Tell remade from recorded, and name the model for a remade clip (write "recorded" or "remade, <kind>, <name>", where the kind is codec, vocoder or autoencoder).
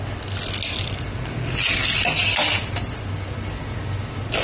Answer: recorded